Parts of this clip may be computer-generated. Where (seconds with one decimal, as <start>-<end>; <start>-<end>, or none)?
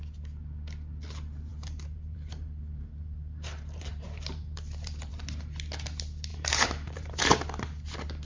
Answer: 1.5-5.1; 6.3-7.4